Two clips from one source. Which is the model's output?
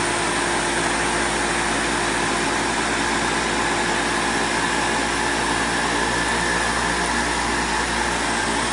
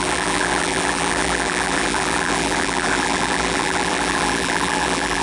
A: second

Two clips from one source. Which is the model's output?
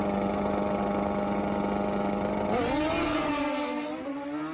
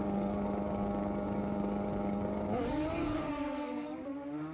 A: second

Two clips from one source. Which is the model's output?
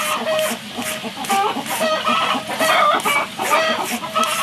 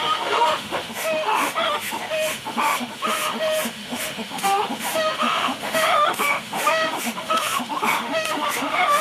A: second